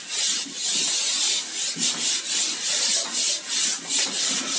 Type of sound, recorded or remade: recorded